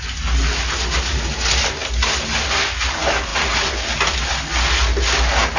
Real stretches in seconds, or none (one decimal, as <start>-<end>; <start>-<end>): 0.0-5.6